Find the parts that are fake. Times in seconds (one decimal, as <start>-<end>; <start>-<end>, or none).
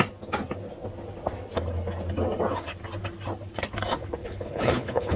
4.2-5.2